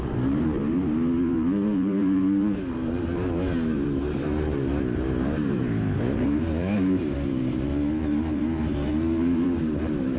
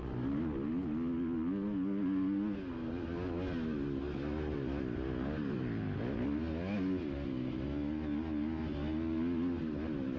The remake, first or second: first